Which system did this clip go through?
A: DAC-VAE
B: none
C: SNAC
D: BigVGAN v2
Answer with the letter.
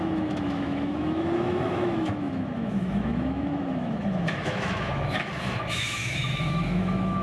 A